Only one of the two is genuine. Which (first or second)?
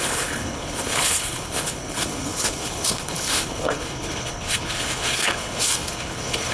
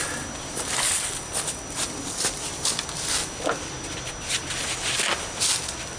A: second